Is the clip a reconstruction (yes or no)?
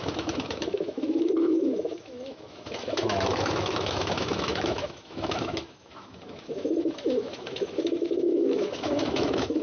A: yes